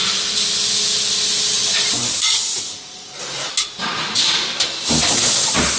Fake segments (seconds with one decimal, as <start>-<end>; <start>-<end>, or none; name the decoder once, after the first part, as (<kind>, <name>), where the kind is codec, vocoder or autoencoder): none